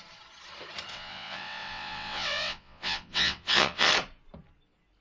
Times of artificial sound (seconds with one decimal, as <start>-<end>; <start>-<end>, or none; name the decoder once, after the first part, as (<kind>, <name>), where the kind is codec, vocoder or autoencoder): 0.9-3.9 (vocoder, WaveNeXt)